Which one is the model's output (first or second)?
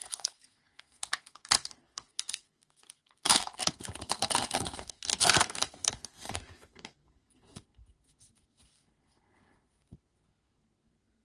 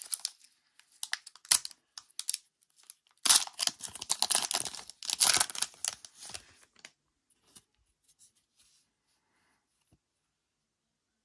first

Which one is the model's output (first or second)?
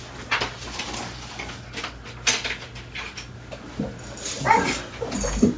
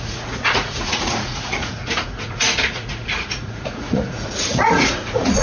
second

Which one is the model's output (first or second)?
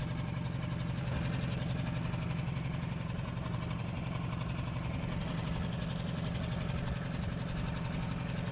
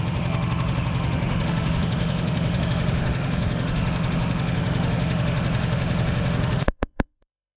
second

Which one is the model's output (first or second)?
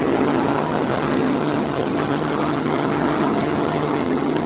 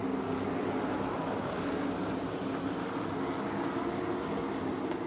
first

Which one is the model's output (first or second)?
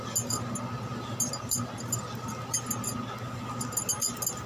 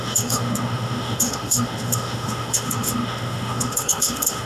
second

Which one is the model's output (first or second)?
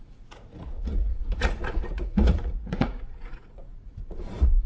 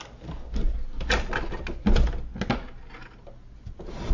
first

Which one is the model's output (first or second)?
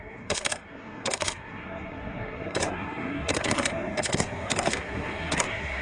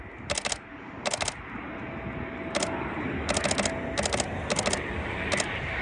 first